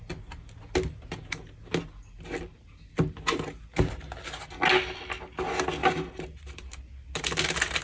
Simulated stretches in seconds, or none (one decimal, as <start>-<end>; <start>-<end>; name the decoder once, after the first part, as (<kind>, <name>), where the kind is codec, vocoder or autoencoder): 5.8-6.7 (vocoder, BigVGAN v2)

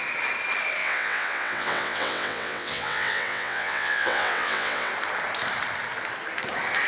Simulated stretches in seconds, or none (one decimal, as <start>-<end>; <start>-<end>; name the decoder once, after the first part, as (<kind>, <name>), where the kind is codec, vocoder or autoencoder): 0.8-4.9 (vocoder, WaveNeXt)

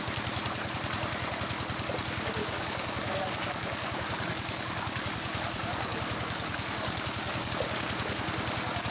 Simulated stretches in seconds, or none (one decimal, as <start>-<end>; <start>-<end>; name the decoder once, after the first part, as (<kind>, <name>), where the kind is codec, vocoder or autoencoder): 2.4-7.5 (codec, DAC)

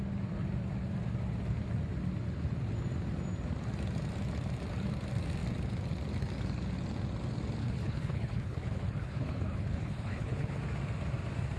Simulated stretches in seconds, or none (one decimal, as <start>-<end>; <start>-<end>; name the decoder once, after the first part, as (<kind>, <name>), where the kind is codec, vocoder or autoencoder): 7.6-10.6 (codec, HILCodec)

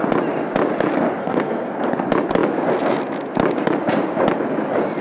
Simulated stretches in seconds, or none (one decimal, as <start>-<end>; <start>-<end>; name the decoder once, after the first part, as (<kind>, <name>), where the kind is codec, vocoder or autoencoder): 1.2-1.7 (codec, SNAC)